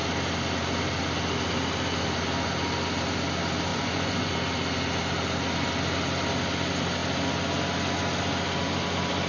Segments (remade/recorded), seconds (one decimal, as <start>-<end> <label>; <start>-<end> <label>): 0.0-3.7 recorded; 3.7-4.3 remade; 4.3-9.3 recorded